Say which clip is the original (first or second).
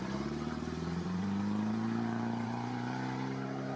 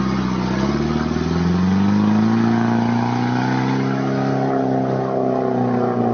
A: second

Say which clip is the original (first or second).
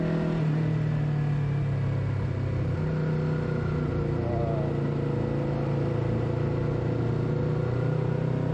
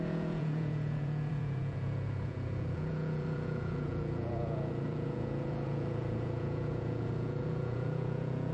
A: first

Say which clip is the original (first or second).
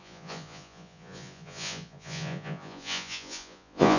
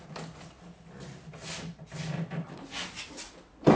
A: second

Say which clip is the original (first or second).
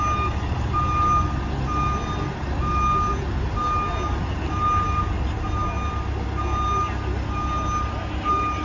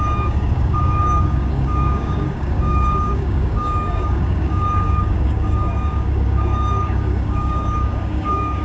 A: first